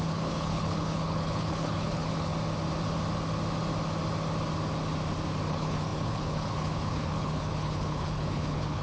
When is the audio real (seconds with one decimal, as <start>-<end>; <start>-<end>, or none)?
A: 2.3-5.5